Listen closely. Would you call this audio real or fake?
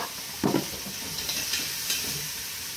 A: fake